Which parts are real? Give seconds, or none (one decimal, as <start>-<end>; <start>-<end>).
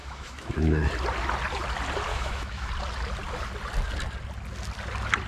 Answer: 0.8-2.1; 2.7-5.3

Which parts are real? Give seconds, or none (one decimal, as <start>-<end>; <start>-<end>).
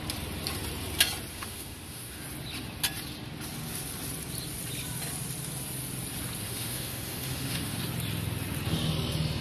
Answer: 0.0-1.3; 2.2-6.4; 7.8-9.4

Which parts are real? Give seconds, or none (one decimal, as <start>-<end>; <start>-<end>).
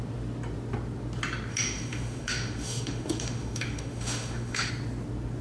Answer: 0.0-1.5; 4.7-5.4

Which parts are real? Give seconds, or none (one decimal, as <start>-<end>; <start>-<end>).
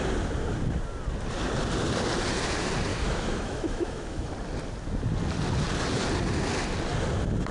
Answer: 0.0-2.9; 4.3-7.5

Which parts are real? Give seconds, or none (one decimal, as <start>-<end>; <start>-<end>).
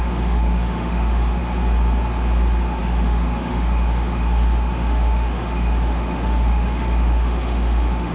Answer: 1.4-2.8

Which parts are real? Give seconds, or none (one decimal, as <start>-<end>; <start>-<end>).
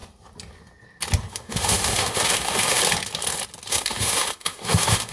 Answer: 0.0-1.3; 2.8-3.7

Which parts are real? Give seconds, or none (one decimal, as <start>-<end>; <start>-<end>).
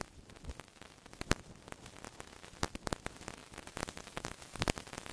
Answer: 0.0-5.1